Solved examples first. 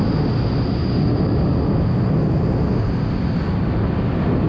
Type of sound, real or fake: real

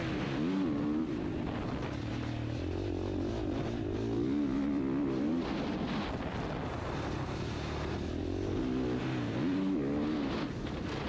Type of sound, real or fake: real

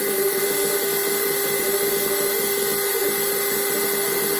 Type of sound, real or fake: real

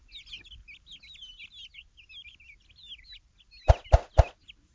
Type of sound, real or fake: real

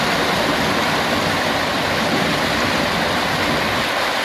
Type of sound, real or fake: real